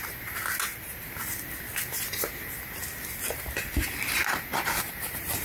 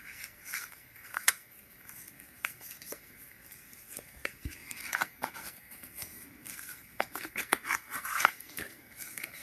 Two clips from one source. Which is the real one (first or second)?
first